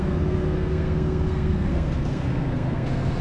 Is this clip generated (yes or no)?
yes